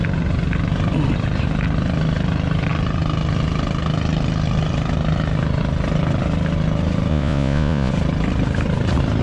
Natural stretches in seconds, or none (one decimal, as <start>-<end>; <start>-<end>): 0.0-7.1; 7.9-9.2